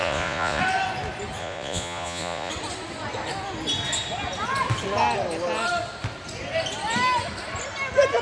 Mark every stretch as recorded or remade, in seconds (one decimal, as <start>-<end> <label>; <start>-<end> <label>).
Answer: 0.0-0.6 remade; 0.6-1.4 recorded; 1.4-2.5 remade; 2.5-8.2 recorded